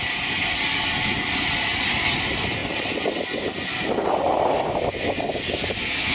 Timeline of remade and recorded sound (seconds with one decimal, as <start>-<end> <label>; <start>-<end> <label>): 0.0-6.1 recorded